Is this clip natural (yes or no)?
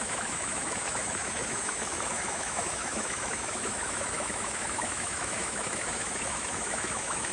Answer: no